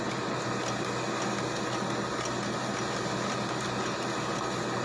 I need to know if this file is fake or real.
real